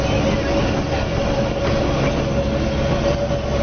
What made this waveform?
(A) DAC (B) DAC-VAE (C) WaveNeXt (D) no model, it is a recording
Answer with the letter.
D